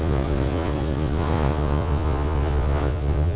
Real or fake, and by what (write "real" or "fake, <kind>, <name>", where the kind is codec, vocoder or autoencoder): fake, vocoder, Vocos